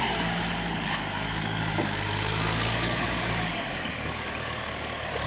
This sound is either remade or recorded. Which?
remade